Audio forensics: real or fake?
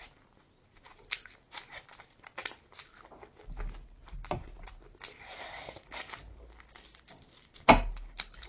real